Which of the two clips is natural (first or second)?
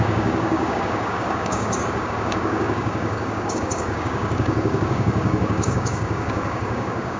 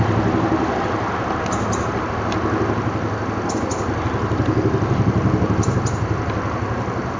second